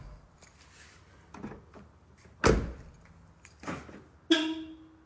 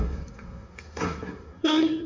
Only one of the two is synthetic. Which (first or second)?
second